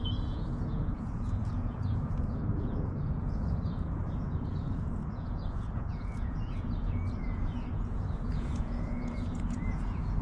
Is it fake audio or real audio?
fake